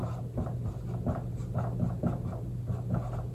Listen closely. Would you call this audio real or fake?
real